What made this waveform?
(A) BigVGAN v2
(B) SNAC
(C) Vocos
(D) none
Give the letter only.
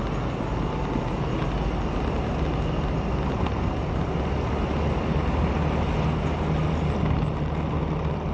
D